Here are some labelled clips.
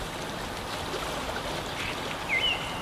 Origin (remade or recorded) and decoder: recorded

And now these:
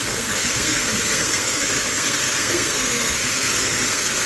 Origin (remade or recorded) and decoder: remade, codec, SNAC